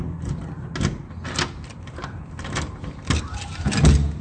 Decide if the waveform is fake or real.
real